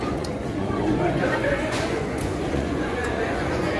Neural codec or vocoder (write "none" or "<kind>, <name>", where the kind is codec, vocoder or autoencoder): vocoder, Vocos